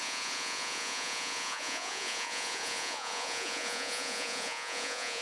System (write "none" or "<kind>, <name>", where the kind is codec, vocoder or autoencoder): vocoder, Vocos